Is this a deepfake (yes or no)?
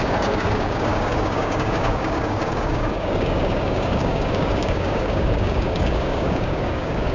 yes